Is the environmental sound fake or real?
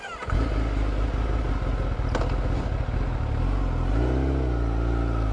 real